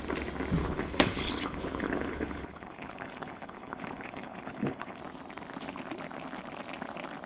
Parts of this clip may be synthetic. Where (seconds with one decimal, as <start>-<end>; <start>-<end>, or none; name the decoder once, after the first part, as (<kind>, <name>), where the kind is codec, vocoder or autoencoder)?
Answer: 0.6-5.0 (codec, HILCodec)